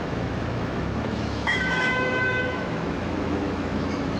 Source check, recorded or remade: remade